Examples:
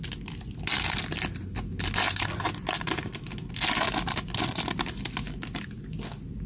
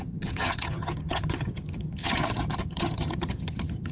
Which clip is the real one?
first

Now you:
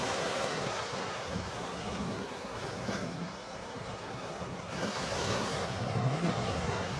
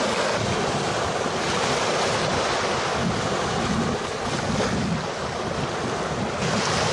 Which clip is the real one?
second